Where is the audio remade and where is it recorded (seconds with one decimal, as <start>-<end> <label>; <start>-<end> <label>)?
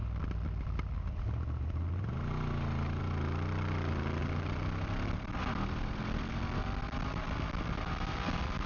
0.0-4.2 recorded; 4.2-8.7 remade